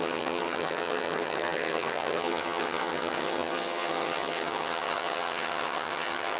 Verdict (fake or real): fake